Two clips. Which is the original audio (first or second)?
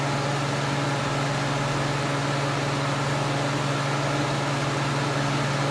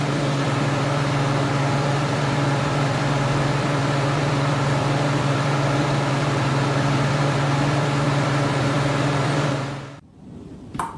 first